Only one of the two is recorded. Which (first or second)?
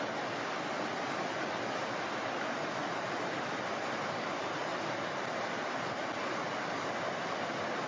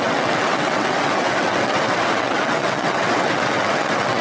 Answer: first